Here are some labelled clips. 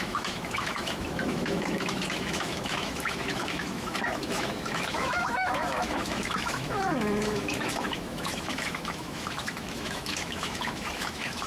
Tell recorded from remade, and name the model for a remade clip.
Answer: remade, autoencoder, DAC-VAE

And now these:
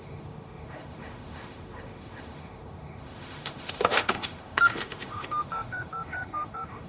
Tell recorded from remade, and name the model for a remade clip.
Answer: remade, autoencoder, DAC-VAE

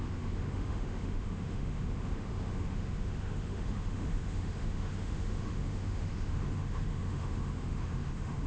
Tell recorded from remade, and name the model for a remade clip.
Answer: remade, autoencoder, DAC-VAE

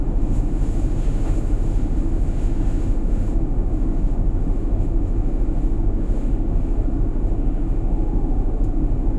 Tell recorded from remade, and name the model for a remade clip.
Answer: remade, autoencoder, DAC-VAE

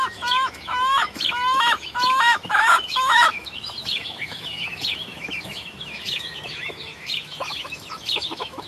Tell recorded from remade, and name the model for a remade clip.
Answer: remade, autoencoder, DAC-VAE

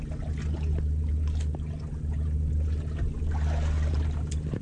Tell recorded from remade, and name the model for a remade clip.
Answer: recorded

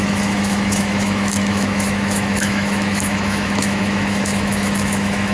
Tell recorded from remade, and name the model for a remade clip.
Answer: remade, autoencoder, DAC-VAE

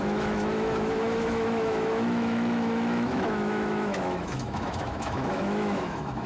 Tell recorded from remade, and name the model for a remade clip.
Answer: remade, autoencoder, DAC-VAE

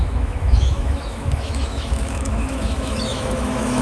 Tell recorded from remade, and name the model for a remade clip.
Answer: remade, autoencoder, DAC-VAE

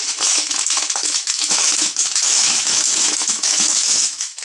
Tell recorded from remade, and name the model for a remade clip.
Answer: remade, autoencoder, DAC-VAE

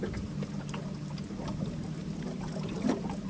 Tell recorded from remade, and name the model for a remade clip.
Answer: recorded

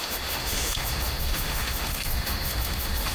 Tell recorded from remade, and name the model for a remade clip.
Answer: remade, autoencoder, DAC-VAE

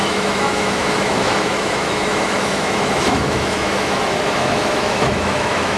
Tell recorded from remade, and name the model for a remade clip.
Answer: remade, autoencoder, DAC-VAE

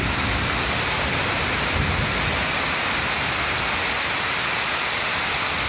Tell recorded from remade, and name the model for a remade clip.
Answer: recorded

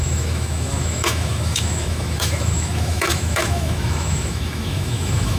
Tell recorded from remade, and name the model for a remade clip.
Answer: remade, autoencoder, DAC-VAE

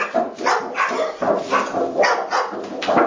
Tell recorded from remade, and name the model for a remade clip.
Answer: recorded